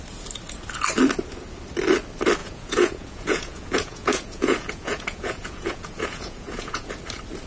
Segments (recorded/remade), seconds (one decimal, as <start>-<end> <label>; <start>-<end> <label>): 0.0-2.4 recorded; 2.4-6.9 remade; 6.9-7.5 recorded